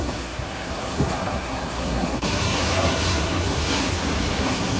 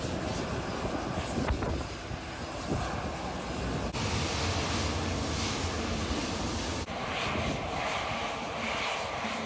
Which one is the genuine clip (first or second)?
second